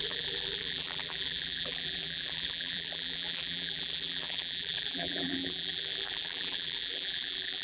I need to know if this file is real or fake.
fake